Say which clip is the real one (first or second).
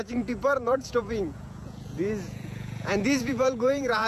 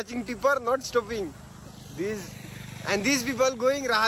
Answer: second